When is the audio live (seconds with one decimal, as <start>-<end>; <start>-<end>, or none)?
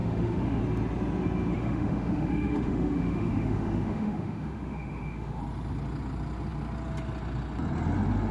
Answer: 0.6-1.5; 5.4-8.3